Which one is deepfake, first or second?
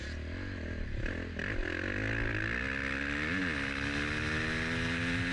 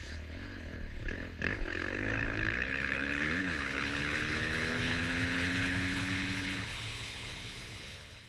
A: second